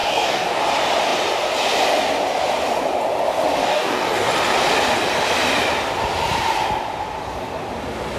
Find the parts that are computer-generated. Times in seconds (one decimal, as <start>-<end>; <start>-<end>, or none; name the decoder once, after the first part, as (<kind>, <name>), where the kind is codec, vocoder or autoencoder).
0.0-0.6 (codec, DAC); 3.6-4.3